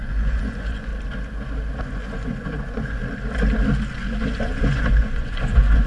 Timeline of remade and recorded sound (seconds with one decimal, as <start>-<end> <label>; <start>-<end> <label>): 0.0-0.9 remade; 0.9-1.8 recorded; 1.8-3.0 remade; 3.0-4.2 recorded; 4.2-5.9 remade